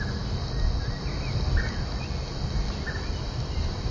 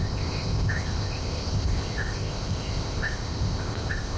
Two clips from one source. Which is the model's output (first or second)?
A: second